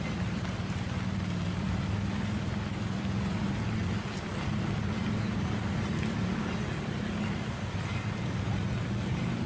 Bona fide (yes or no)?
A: yes